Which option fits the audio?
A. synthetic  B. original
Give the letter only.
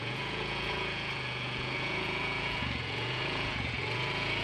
A